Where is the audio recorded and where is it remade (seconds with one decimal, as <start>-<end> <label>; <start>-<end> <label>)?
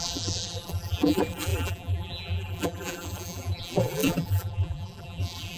0.0-5.6 remade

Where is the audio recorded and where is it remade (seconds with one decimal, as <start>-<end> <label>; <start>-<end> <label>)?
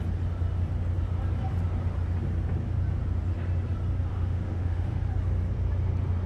0.0-4.1 recorded; 4.1-5.0 remade; 5.0-6.3 recorded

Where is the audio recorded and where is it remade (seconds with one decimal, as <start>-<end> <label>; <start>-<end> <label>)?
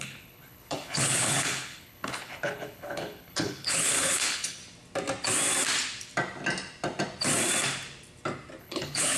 0.0-4.6 remade; 4.6-8.6 recorded; 8.6-9.2 remade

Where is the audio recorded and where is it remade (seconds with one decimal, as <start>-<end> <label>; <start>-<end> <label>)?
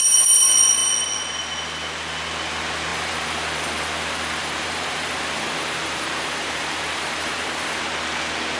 0.0-2.9 recorded; 2.9-7.8 remade; 7.8-8.6 recorded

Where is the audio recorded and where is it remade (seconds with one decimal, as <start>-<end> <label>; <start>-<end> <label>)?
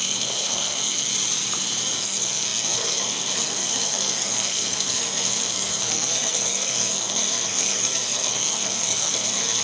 0.0-1.1 remade; 1.1-2.0 recorded; 2.0-9.6 remade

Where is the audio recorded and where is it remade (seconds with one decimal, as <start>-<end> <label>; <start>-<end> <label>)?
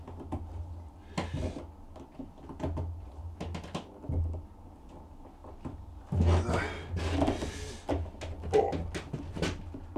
0.0-10.0 recorded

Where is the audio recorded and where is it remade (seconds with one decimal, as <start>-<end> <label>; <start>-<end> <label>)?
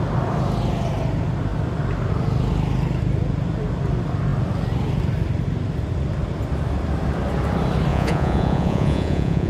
0.0-7.9 recorded; 7.9-9.5 remade